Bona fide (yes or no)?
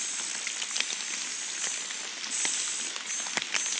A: yes